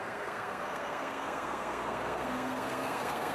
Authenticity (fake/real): fake